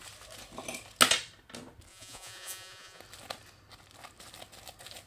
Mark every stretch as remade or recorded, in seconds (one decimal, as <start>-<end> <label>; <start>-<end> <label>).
0.0-1.9 recorded; 1.9-3.0 remade; 3.0-5.1 recorded